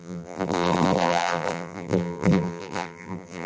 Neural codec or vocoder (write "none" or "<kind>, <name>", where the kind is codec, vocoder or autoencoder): vocoder, BigVGAN v2